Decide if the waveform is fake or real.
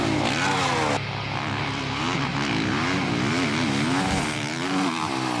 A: real